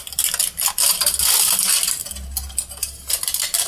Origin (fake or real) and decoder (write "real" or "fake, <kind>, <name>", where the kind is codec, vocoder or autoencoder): real